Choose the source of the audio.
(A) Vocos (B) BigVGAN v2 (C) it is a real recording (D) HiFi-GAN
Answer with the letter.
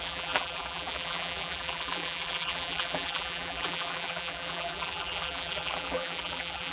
B